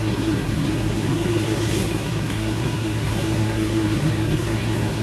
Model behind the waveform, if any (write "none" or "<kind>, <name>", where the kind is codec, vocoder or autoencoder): codec, SNAC